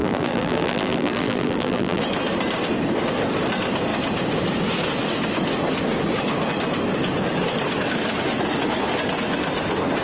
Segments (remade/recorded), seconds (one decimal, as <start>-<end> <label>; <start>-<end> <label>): 0.0-2.0 remade; 2.0-10.0 recorded